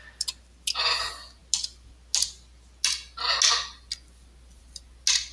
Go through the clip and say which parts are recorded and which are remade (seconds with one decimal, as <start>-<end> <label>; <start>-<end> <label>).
0.0-5.3 recorded